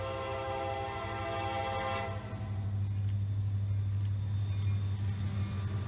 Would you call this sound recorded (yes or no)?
yes